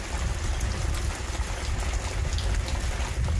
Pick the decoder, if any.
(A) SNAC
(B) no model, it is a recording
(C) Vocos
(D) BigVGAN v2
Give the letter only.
B